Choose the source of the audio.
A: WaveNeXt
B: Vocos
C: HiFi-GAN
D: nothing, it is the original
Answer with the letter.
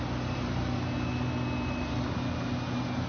D